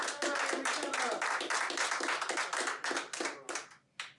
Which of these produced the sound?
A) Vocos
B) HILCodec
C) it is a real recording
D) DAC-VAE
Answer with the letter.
C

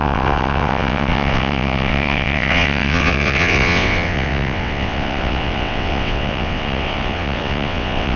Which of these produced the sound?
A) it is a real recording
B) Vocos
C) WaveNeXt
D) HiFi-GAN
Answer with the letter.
C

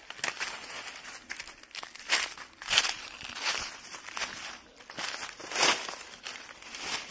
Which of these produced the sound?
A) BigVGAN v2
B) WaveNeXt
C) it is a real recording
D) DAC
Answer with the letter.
C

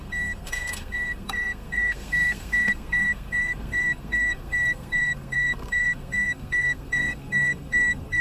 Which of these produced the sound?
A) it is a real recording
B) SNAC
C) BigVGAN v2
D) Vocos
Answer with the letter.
B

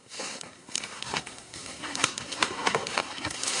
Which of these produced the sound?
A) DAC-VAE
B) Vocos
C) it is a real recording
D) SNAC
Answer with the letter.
D